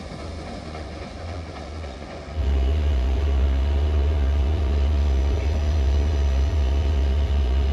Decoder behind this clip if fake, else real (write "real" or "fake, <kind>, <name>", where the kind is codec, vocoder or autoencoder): fake, vocoder, Vocos